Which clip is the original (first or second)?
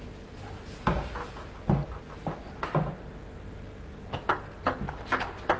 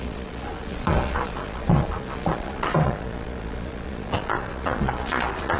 first